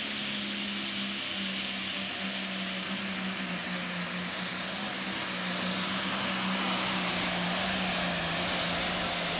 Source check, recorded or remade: recorded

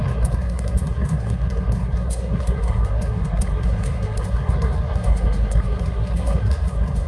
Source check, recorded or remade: remade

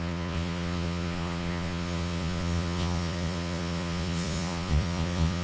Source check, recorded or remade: remade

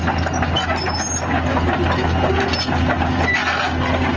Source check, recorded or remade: recorded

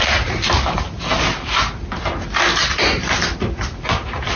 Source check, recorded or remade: recorded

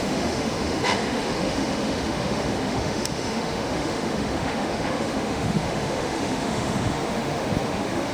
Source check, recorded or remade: remade